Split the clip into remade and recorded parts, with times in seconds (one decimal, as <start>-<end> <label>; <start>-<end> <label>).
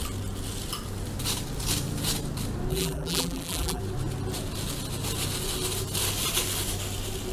0.0-2.7 recorded; 2.7-3.8 remade; 3.8-7.3 recorded